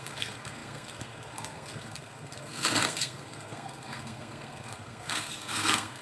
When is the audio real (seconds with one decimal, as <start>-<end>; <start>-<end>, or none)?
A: none